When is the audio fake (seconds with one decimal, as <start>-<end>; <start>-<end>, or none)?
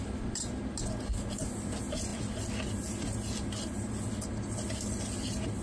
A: none